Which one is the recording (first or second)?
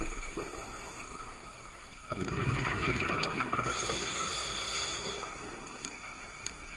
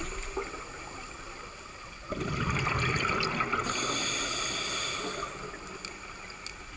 second